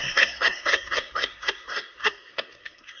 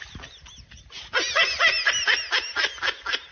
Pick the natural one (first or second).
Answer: second